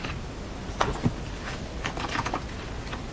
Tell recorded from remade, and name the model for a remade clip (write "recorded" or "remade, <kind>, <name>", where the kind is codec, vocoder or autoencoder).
recorded